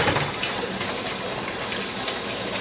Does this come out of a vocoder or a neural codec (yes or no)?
no